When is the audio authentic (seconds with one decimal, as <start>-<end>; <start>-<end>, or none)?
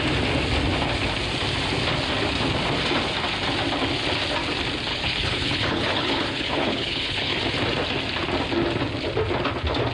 0.0-4.9; 7.4-9.9